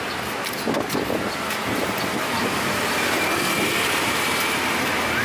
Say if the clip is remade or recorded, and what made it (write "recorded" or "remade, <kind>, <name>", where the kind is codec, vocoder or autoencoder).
recorded